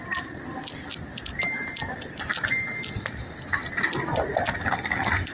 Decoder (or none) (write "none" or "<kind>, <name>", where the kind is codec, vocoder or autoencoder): none